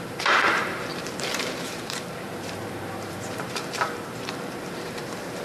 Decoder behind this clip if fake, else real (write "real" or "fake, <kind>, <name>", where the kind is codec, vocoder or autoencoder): fake, vocoder, BigVGAN v2